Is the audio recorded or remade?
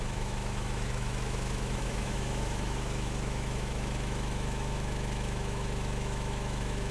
remade